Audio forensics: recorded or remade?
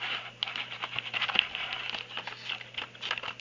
recorded